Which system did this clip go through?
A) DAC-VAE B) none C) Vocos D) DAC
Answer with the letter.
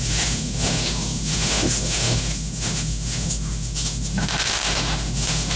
A